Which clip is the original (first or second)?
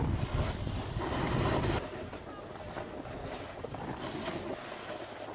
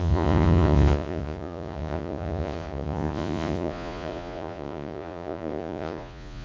first